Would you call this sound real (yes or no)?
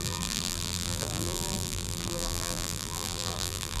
no